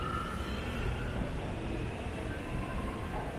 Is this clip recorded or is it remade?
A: recorded